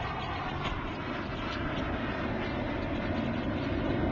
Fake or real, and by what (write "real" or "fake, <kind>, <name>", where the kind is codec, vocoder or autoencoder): real